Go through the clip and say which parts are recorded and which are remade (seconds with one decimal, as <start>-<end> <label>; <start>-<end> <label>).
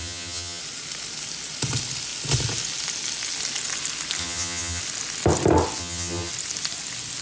0.0-0.6 remade; 0.6-4.2 recorded; 4.2-4.8 remade; 4.8-5.8 recorded; 5.8-6.3 remade; 6.3-7.2 recorded